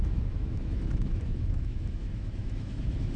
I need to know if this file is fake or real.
fake